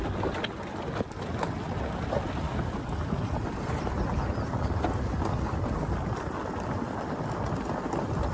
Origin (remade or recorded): recorded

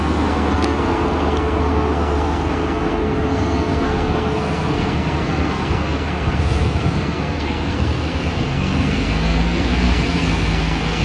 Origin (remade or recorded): remade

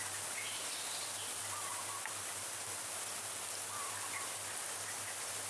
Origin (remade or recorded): recorded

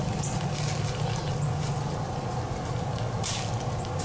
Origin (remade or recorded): recorded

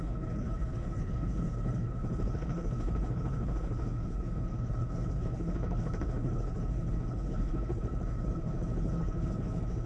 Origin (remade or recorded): remade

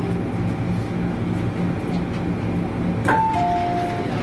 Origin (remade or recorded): recorded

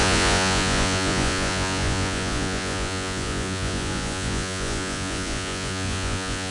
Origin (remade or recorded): remade